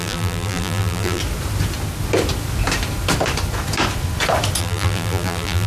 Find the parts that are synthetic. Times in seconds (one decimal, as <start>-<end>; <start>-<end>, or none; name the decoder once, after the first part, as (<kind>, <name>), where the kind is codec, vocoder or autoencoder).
0.0-1.2 (vocoder, BigVGAN v2); 4.6-5.7